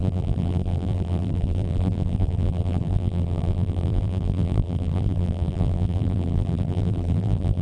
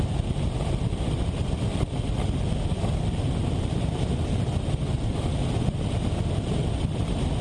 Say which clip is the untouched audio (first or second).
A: second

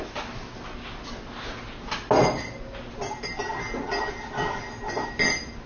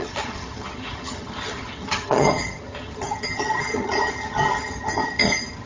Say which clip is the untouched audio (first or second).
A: first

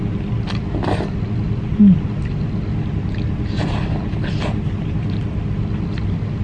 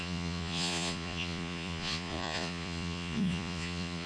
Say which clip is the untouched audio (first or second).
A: first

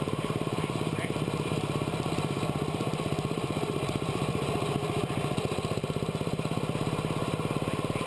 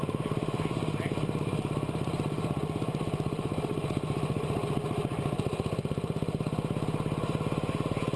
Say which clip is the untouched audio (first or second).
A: second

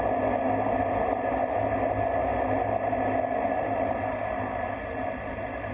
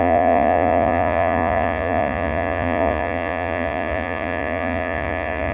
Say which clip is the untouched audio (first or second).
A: first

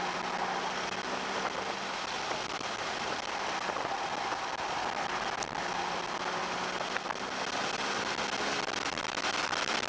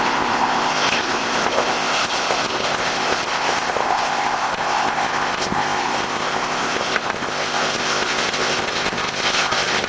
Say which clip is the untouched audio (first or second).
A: first